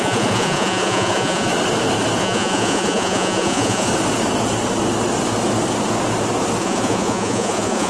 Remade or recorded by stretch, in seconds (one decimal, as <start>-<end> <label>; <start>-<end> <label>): 0.0-1.5 remade; 1.5-2.2 recorded; 2.2-3.9 remade; 3.9-6.6 recorded; 6.6-7.9 remade